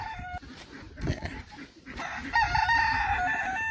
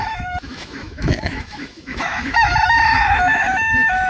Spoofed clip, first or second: second